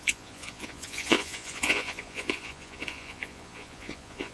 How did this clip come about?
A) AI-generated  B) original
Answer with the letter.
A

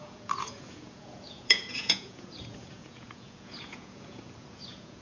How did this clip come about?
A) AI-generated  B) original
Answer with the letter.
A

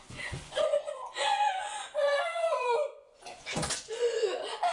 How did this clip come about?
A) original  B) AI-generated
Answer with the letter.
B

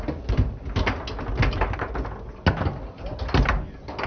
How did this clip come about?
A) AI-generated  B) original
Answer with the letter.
B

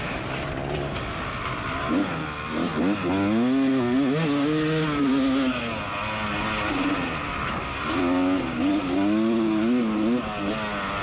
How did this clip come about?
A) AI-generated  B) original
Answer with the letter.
B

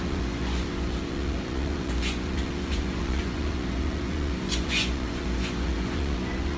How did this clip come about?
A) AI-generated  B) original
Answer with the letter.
A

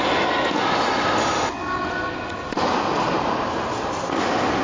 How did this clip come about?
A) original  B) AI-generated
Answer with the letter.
A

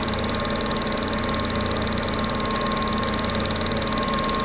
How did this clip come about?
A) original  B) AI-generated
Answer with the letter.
A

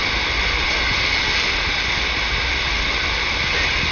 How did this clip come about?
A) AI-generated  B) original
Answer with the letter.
B